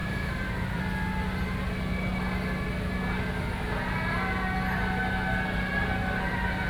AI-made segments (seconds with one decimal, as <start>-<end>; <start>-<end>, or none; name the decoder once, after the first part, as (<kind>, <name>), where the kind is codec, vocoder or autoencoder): 0.0-0.8 (vocoder, BigVGAN v2)

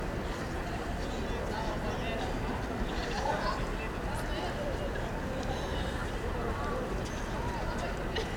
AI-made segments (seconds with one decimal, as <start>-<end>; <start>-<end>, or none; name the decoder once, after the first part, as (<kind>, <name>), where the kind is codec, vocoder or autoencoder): 3.0-3.6 (vocoder, BigVGAN v2); 5.7-7.1

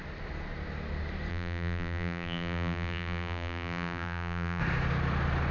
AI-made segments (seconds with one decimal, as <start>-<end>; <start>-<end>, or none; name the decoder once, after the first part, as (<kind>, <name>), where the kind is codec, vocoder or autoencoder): 1.3-4.6 (vocoder, BigVGAN v2)

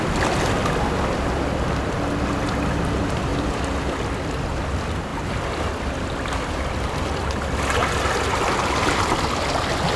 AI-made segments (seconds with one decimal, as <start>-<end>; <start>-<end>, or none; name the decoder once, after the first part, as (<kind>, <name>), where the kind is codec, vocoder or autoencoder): 3.3-4.6 (vocoder, BigVGAN v2); 5.1-6.6

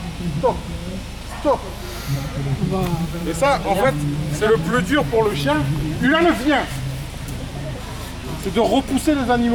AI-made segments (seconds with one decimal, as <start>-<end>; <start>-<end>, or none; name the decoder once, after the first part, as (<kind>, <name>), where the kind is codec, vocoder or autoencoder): 3.1-7.5 (vocoder, BigVGAN v2)

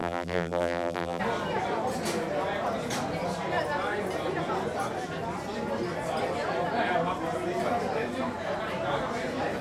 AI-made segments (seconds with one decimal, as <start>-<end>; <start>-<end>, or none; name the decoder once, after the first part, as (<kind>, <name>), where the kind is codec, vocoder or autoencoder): 0.0-1.2 (vocoder, BigVGAN v2)